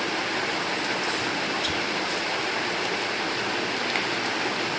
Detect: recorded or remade recorded